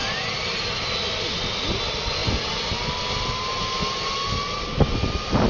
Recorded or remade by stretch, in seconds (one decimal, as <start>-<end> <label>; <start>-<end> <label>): 0.0-0.6 remade; 0.6-5.5 recorded

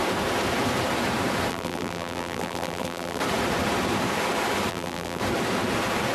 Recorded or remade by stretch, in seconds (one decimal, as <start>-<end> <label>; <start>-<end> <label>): 0.0-1.5 recorded; 1.5-3.2 remade; 3.2-4.7 recorded; 4.7-5.2 remade; 5.2-6.1 recorded

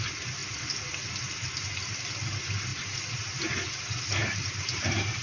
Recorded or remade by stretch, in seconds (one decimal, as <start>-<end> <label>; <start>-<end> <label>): 0.0-4.2 recorded; 4.2-5.2 remade

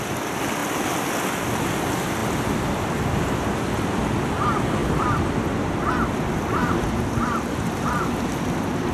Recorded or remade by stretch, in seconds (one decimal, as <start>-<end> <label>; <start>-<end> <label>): 0.0-2.2 recorded; 2.2-4.1 remade; 4.1-4.8 recorded; 4.8-7.7 remade; 7.7-8.9 recorded

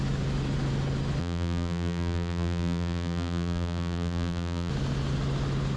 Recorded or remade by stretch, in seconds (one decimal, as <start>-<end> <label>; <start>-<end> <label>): 0.0-1.2 recorded; 1.2-4.7 remade; 4.7-5.8 recorded

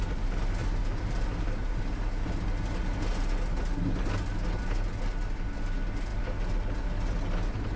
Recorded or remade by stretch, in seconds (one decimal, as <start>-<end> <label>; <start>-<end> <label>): 0.0-0.6 recorded; 0.6-1.8 remade; 1.8-7.8 recorded